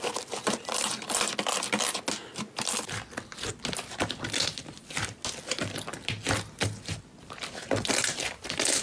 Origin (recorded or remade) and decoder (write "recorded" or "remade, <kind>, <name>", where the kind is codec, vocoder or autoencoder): recorded